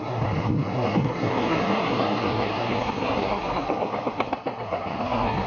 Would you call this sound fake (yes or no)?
yes